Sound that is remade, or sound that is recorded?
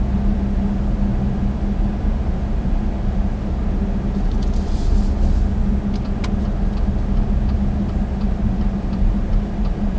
recorded